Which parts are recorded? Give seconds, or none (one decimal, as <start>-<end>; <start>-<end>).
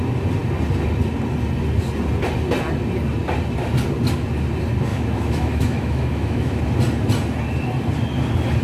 0.0-4.9; 6.6-8.6